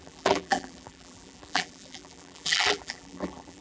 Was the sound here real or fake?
fake